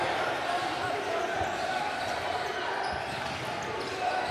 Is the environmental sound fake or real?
real